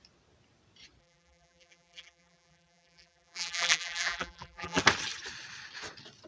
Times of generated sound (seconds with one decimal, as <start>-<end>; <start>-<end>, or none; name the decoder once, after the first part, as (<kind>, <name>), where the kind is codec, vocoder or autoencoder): 1.0-4.8 (vocoder, BigVGAN v2)